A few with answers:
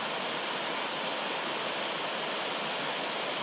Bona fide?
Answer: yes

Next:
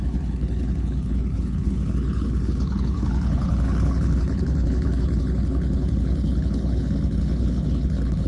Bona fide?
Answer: no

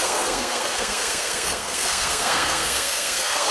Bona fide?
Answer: no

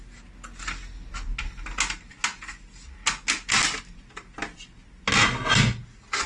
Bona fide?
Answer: yes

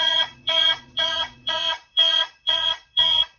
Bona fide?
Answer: no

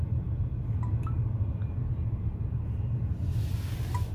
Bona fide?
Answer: yes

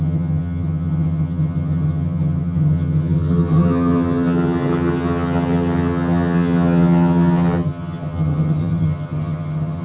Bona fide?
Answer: no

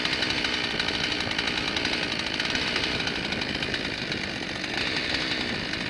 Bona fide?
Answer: yes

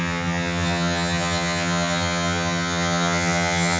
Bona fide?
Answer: no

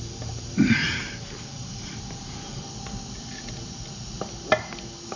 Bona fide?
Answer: yes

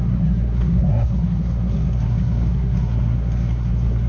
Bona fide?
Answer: no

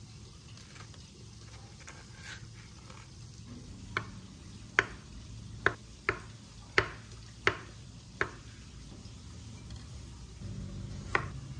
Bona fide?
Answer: yes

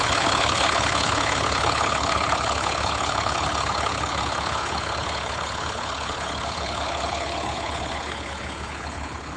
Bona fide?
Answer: no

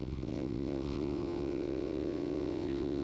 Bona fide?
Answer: no